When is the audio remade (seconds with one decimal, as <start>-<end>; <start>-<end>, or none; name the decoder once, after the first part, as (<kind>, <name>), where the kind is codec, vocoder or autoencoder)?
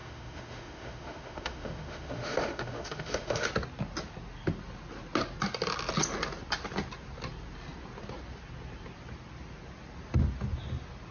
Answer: 0.0-3.5 (autoencoder, DAC-VAE)